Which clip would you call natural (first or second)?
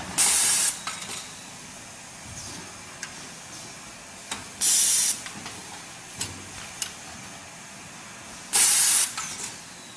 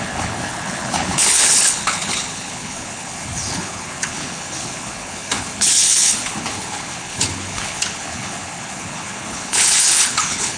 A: first